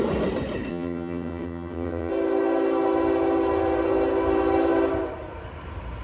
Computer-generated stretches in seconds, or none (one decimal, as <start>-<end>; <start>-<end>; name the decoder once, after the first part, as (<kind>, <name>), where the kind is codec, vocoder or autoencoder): 0.7-2.1 (vocoder, HiFi-GAN)